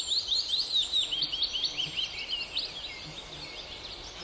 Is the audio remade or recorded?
recorded